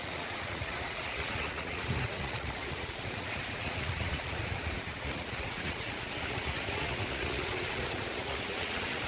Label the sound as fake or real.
fake